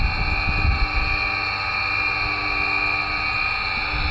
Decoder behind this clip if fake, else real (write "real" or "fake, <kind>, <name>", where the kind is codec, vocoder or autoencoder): real